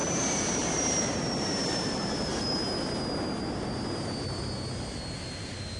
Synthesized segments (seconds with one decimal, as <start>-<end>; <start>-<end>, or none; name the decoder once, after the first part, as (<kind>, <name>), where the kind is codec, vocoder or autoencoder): 0.0-2.6 (vocoder, BigVGAN v2)